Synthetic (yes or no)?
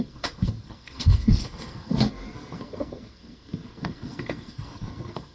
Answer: yes